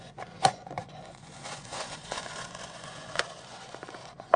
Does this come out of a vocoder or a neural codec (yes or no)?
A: yes